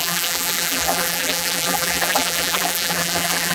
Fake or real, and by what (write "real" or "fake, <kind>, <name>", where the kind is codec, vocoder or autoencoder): fake, vocoder, BigVGAN v2